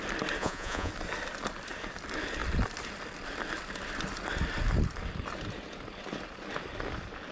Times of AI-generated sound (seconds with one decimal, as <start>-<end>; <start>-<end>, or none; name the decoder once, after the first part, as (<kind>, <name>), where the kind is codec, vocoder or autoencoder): 0.4-0.9 (vocoder, Vocos)